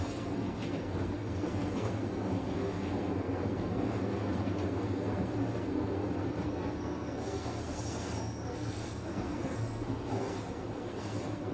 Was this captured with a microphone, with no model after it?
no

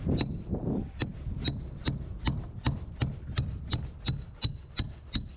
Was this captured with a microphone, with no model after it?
no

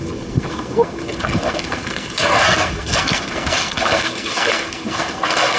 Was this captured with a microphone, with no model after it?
no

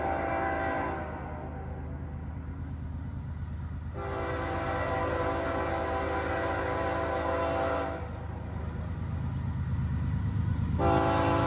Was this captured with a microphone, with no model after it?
yes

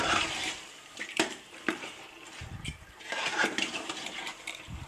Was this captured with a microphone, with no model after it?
no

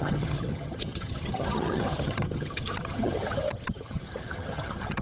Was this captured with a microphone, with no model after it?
no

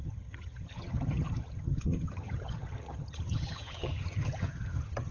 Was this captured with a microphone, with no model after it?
no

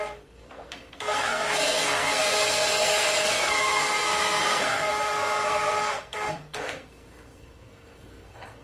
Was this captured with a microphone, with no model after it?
no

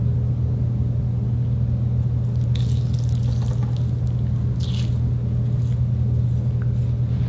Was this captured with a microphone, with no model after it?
yes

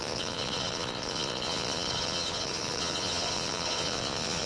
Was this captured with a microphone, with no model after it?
no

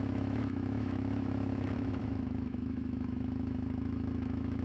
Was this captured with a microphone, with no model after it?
no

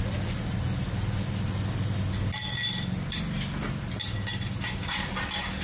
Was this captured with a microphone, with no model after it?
yes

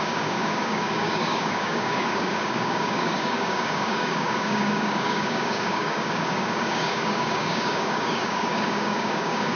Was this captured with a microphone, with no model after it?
no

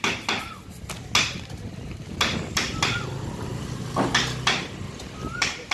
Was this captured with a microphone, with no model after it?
yes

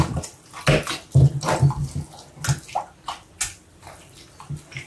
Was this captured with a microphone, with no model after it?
yes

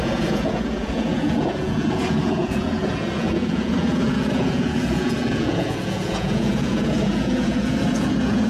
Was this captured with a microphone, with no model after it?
no